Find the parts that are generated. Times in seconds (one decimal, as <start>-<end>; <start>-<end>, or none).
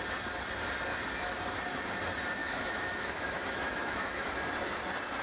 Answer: 2.4-4.3